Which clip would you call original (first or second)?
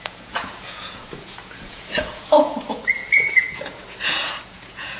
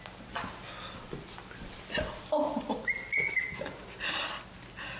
second